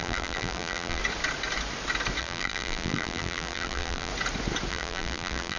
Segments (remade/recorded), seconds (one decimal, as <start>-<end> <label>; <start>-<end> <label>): 0.0-1.0 remade; 1.0-2.2 recorded; 2.2-4.1 remade; 4.1-4.7 recorded; 4.7-5.6 remade